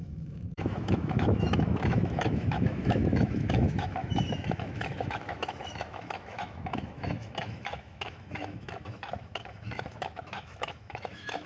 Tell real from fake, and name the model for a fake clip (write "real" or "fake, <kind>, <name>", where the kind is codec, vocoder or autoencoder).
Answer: fake, autoencoder, DAC-VAE